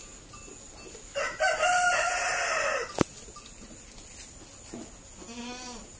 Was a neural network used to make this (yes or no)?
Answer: no